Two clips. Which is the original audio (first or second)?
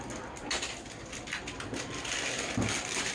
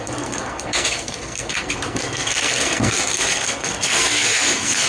first